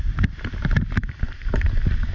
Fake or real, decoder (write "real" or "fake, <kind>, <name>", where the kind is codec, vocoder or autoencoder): real